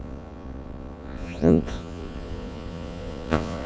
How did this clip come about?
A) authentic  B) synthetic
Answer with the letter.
B